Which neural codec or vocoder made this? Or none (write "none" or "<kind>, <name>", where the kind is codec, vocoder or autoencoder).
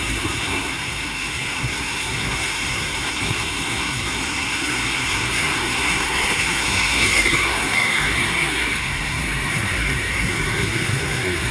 codec, SNAC